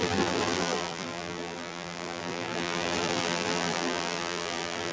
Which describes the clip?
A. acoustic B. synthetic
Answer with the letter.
B